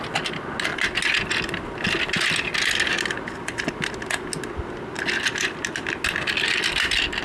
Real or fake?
real